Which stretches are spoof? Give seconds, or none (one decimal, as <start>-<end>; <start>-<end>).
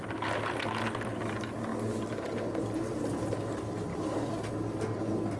3.9-4.5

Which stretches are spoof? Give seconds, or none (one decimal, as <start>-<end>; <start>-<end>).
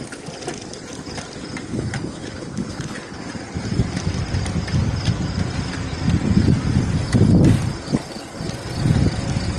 1.7-3.3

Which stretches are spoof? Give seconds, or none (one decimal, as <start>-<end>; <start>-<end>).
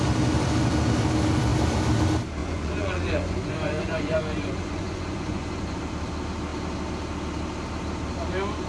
2.4-5.8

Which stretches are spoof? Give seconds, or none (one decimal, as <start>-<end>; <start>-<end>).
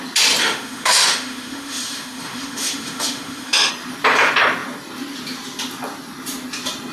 0.4-3.7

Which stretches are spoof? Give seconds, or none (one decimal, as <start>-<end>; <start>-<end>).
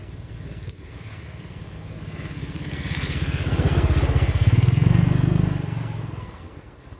0.0-7.0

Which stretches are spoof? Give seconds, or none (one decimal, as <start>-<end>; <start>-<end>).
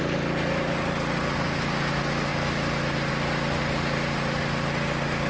none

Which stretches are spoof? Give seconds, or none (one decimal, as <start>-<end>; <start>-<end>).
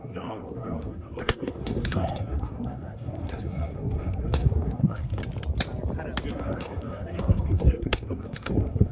0.0-5.2; 6.3-8.9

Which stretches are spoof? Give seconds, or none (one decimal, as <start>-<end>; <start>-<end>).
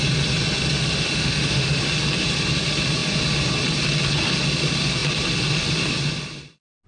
0.8-1.8